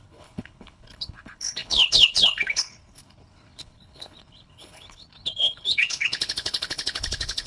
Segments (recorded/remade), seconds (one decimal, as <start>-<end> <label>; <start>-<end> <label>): 0.0-7.5 remade